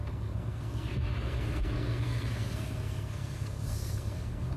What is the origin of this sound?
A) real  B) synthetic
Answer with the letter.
B